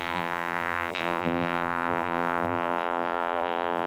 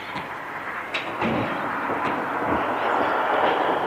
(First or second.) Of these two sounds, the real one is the second